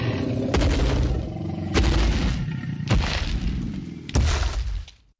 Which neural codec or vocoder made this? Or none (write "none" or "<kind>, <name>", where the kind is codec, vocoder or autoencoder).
none